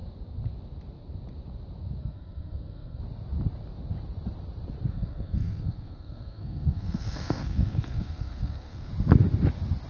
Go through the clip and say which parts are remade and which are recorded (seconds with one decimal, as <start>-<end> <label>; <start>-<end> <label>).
0.0-2.0 recorded; 2.0-3.0 remade; 3.0-4.9 recorded; 4.9-8.9 remade; 8.9-9.9 recorded

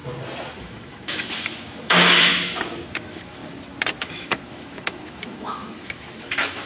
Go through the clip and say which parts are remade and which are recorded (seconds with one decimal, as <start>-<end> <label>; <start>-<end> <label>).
0.0-0.6 recorded; 0.6-2.3 remade; 2.3-3.0 recorded; 3.0-3.4 remade; 3.4-4.0 recorded; 4.0-6.7 remade

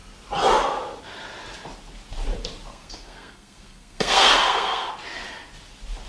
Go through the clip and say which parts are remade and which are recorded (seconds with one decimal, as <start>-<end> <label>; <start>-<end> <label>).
0.0-2.7 recorded; 2.7-4.9 remade; 4.9-6.1 recorded

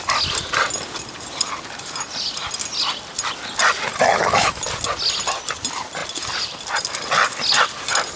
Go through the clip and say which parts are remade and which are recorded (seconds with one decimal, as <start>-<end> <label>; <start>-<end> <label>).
0.0-4.1 recorded; 4.1-4.6 remade; 4.6-8.2 recorded

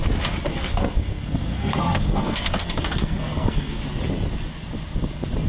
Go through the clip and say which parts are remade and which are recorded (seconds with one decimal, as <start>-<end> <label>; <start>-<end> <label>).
0.0-0.5 recorded; 0.5-3.8 remade; 3.8-5.5 recorded